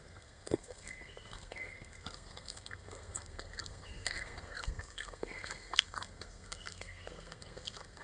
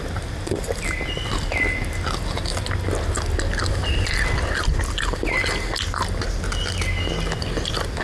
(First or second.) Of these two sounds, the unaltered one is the second